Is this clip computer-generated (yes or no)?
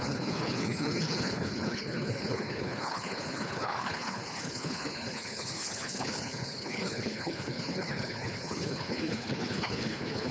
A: yes